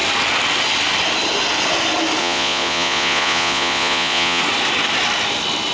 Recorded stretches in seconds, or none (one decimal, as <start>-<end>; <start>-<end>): 0.0-2.2; 4.4-5.7